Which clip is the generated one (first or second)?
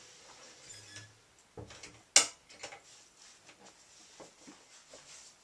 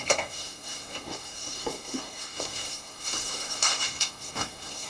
second